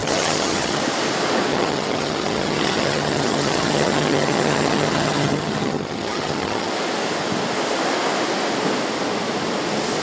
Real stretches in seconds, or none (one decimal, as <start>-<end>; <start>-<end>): 0.8-1.5; 6.7-10.0